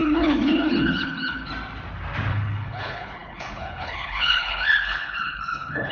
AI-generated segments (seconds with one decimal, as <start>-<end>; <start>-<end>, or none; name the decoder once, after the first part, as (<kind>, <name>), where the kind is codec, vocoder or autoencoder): 0.0-1.5 (codec, HILCodec); 2.3-5.9

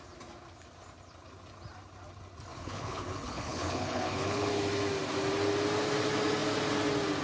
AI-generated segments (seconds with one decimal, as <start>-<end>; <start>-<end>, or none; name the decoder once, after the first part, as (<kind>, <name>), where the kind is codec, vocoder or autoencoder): 2.5-4.5 (codec, HILCodec)

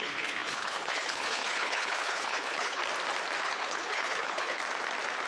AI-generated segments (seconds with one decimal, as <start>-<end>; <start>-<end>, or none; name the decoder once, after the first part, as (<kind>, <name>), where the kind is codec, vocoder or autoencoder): 0.0-2.8 (codec, HILCodec); 3.4-4.6

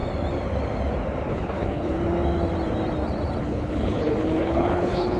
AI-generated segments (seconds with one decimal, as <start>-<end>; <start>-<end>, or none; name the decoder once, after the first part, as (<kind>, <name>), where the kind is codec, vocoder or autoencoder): 1.3-2.0 (codec, HILCodec); 3.4-5.2